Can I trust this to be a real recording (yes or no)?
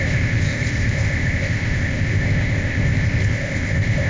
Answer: no